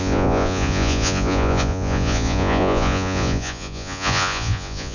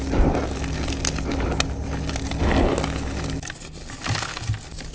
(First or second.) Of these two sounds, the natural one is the second